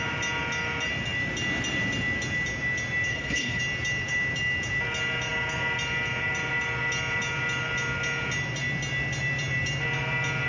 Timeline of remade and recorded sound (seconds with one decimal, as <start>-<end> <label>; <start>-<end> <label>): 0.0-3.1 recorded; 3.1-3.6 remade; 3.6-10.5 recorded

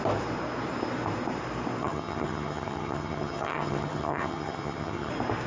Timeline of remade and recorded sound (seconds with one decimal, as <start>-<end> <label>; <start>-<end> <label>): 0.0-1.8 recorded; 1.8-5.1 remade; 5.1-5.5 recorded

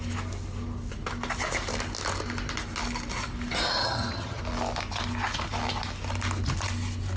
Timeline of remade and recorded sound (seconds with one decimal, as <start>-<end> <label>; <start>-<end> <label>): 0.0-3.8 recorded; 3.8-4.4 remade; 4.4-7.2 recorded

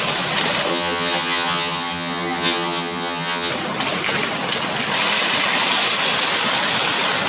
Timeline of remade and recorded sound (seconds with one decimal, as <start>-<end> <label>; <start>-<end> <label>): 0.0-0.7 recorded; 0.7-3.5 remade; 3.5-7.3 recorded

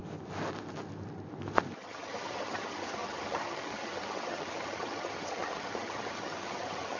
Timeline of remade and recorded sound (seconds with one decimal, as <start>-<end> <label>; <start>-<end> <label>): 0.0-1.8 recorded; 1.8-7.0 remade